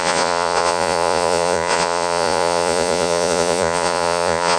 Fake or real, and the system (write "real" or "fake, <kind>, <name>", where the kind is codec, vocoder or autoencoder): fake, vocoder, Vocos